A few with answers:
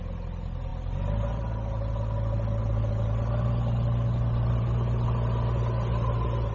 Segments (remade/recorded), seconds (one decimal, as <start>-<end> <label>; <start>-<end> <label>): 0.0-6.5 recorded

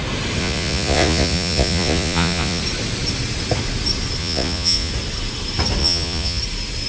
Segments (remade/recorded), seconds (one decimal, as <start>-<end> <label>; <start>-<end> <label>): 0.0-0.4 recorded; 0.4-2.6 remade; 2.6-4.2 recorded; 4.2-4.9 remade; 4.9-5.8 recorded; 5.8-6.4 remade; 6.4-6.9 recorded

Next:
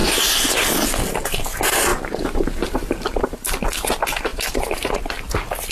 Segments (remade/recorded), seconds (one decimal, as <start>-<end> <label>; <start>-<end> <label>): 0.0-1.9 recorded; 1.9-3.4 remade; 3.4-4.3 recorded; 4.3-4.9 remade; 4.9-5.7 recorded

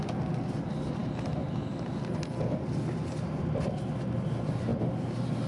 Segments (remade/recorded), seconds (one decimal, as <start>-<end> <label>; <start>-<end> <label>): 0.0-5.5 recorded

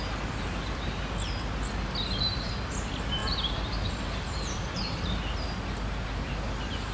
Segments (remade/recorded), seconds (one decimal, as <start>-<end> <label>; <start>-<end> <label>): 0.0-3.2 recorded; 3.2-5.2 remade; 5.2-6.9 recorded

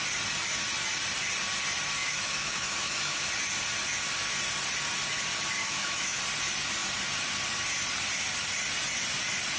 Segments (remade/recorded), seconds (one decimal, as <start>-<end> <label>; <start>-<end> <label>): 0.0-2.0 recorded; 2.0-3.3 remade; 3.3-5.6 recorded; 5.6-6.2 remade; 6.2-9.6 recorded

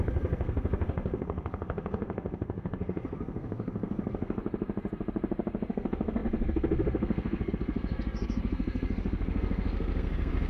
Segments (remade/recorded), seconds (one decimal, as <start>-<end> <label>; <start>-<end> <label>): 0.0-4.4 remade; 4.4-5.7 recorded; 5.7-10.5 remade